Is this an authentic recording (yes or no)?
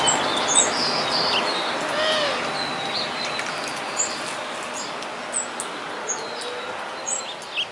yes